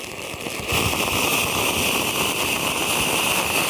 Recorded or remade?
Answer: recorded